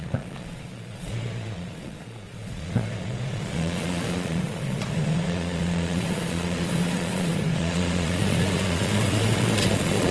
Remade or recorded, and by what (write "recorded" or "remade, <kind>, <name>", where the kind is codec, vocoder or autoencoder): remade, vocoder, Vocos